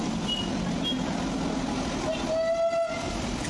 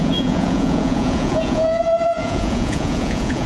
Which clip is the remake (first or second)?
second